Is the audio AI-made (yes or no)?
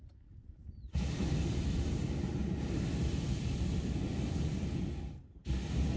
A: no